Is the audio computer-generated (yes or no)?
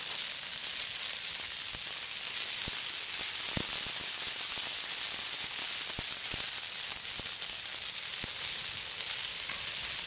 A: no